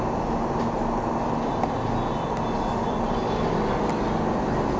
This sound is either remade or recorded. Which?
recorded